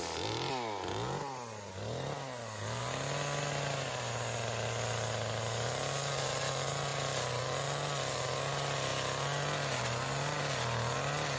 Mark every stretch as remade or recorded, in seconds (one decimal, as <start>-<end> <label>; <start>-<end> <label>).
0.0-11.4 recorded